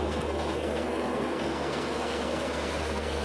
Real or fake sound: fake